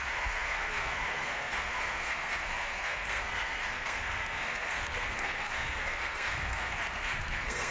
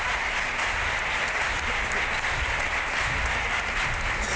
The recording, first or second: second